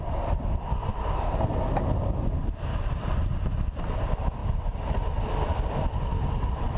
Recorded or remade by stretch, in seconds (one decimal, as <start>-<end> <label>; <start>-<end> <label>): 0.0-2.7 recorded; 2.7-3.6 remade; 3.6-4.4 recorded; 4.4-5.2 remade; 5.2-6.8 recorded